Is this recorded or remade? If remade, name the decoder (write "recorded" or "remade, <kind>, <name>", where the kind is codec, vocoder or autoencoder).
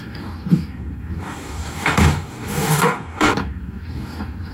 remade, codec, DAC